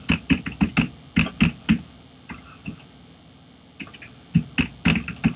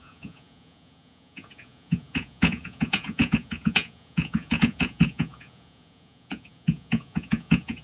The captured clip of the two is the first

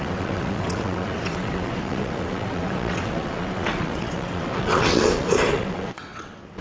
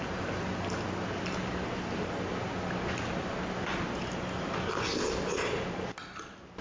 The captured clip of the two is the second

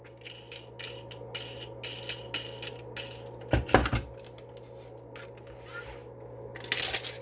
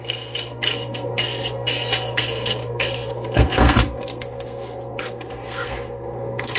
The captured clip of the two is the first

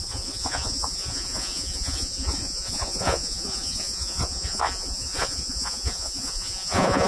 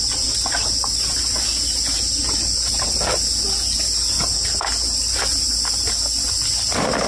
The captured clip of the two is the second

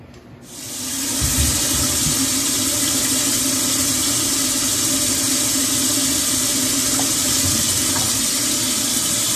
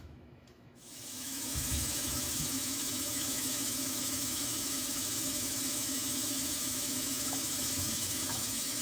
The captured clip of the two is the first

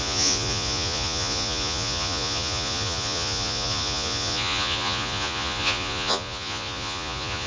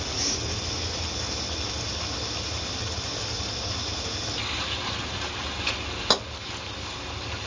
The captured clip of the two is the second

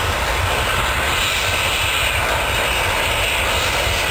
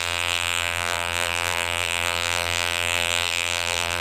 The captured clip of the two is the first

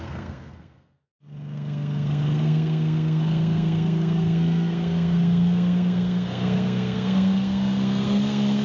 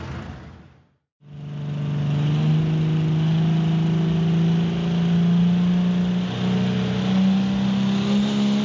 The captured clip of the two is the second